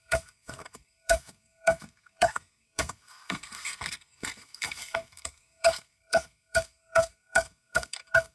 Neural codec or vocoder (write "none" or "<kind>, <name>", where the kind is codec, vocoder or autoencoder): codec, SNAC